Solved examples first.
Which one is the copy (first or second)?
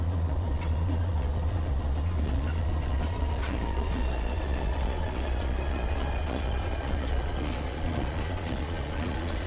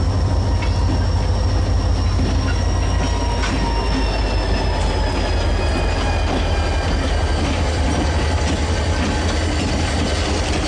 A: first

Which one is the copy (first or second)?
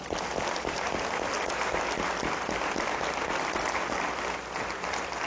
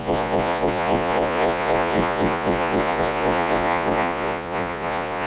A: second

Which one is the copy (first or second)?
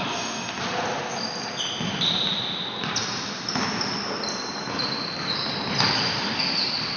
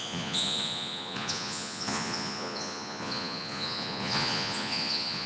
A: second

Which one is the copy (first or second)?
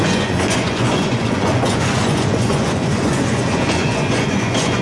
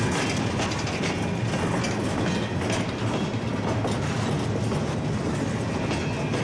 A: first